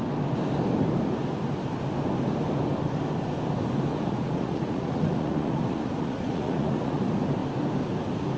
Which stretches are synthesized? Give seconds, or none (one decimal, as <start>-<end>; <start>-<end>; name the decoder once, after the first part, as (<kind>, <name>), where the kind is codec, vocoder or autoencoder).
3.9-7.0 (vocoder, Vocos)